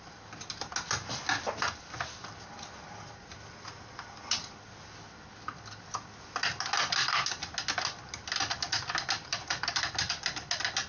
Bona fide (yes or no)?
yes